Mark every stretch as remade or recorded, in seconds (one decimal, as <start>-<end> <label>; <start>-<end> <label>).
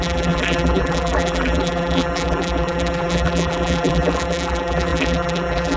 0.0-5.8 remade